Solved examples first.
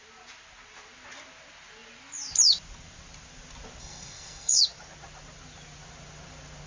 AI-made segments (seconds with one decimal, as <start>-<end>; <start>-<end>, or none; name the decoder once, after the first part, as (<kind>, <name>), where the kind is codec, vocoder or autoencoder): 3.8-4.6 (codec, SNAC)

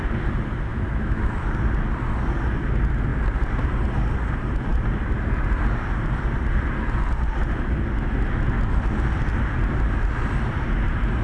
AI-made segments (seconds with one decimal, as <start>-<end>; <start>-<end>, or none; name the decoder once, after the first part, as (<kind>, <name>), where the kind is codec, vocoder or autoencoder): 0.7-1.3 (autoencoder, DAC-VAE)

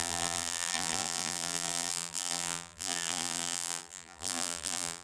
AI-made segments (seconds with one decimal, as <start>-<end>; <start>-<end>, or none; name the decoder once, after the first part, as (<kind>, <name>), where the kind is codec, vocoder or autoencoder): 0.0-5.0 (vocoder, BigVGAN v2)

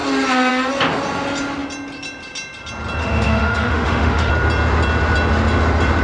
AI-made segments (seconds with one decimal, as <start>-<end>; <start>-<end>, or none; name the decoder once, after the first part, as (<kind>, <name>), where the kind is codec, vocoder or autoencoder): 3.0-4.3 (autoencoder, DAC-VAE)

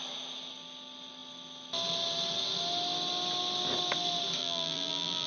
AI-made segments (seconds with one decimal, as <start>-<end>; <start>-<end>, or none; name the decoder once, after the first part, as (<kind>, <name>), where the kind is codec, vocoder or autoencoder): 4.4-5.3 (vocoder, BigVGAN v2)